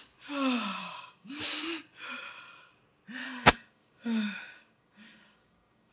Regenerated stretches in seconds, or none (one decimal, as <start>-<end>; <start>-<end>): 0.8-1.4; 3.2-5.9